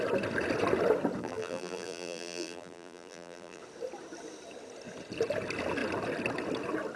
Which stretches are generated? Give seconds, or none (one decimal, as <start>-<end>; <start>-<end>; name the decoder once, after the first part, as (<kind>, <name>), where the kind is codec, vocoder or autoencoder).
1.2-3.6 (vocoder, BigVGAN v2)